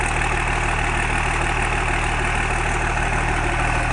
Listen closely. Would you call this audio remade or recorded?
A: recorded